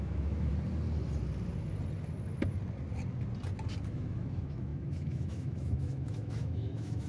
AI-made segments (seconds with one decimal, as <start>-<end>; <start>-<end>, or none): 0.0-0.5; 3.9-7.1